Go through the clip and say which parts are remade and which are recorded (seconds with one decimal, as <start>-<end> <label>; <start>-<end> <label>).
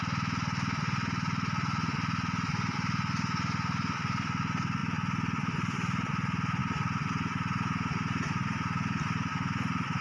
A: 0.0-10.0 recorded